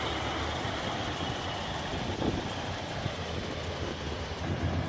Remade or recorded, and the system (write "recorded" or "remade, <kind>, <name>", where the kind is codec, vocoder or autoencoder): recorded